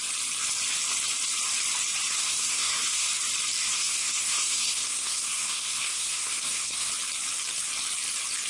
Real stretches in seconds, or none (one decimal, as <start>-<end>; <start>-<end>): 0.0-2.2; 3.1-3.6; 6.9-8.5